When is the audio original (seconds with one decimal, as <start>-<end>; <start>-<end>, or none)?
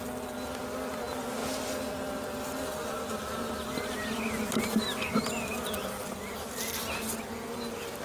0.0-8.0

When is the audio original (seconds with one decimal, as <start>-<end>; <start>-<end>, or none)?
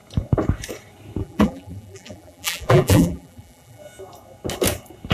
0.0-1.2; 3.8-5.1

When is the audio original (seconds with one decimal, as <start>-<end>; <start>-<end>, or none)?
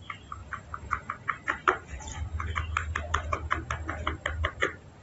none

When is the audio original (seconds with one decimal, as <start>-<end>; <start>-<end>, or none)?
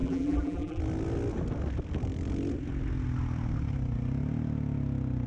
0.8-5.3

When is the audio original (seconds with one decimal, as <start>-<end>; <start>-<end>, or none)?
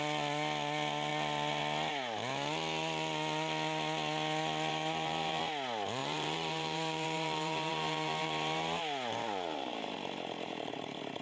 0.0-4.7; 5.4-6.0; 10.7-11.2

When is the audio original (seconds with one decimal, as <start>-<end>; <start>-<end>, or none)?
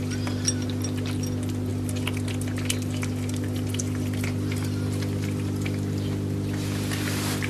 0.0-7.5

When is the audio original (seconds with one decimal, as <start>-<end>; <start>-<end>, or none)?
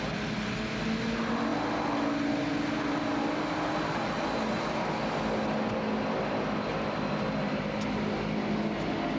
0.0-9.2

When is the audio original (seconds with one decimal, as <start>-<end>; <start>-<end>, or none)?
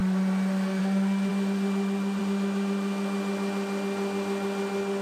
0.0-5.0